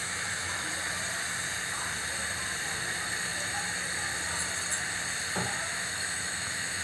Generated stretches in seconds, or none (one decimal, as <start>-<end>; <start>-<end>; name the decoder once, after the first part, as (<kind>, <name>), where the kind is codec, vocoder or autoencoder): 0.0-0.7 (autoencoder, DAC-VAE); 5.7-6.8